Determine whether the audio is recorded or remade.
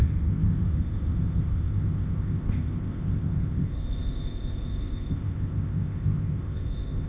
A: remade